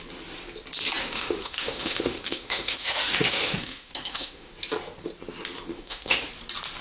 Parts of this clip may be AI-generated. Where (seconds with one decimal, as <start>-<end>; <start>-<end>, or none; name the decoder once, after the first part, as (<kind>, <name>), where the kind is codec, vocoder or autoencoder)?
1.0-4.5 (autoencoder, DAC-VAE); 5.7-6.3